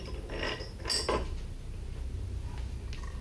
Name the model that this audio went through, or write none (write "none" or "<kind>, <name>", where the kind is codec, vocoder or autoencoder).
none